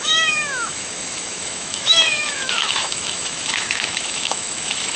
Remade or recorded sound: remade